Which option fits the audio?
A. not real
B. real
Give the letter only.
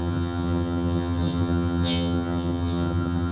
A